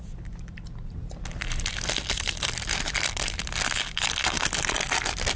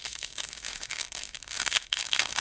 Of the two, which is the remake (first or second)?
second